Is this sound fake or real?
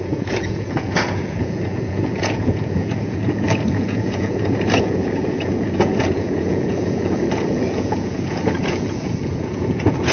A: fake